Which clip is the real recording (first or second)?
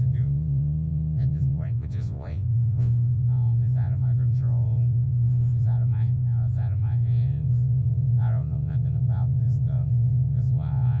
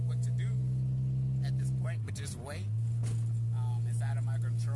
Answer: second